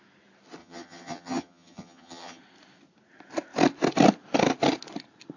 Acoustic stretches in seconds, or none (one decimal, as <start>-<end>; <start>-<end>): 0.0-0.6; 2.4-5.4